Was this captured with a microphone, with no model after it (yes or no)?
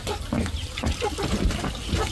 yes